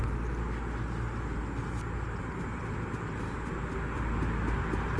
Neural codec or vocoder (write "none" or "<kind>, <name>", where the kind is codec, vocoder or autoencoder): none